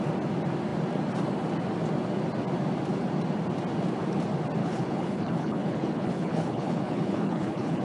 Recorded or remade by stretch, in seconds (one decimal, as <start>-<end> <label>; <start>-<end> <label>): 0.0-4.6 recorded; 4.6-7.8 remade